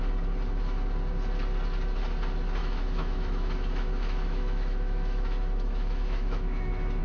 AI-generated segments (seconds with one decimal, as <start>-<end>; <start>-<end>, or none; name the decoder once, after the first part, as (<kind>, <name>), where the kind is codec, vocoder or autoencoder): 2.6-7.0 (autoencoder, DAC-VAE)